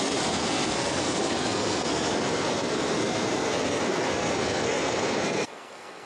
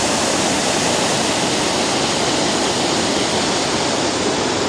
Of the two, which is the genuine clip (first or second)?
second